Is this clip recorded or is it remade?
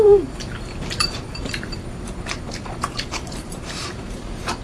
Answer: remade